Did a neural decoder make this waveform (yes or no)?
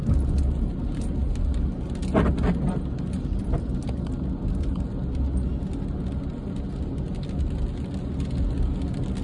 no